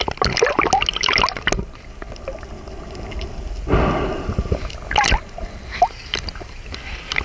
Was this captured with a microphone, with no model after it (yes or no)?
yes